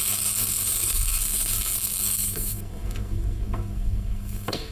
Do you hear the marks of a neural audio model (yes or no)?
yes